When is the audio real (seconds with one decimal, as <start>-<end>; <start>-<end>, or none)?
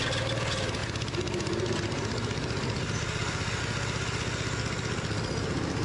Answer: 0.0-5.8